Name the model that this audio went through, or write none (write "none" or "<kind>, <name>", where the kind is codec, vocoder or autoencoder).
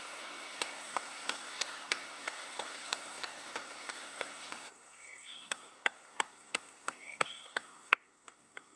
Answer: codec, SNAC